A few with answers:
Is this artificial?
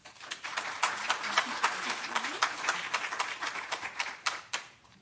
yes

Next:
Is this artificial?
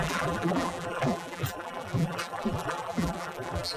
yes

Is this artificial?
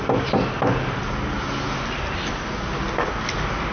no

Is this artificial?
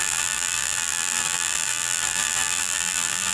yes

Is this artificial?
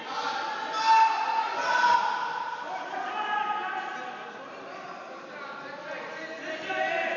no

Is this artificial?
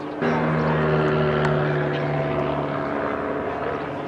no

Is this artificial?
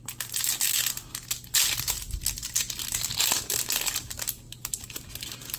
no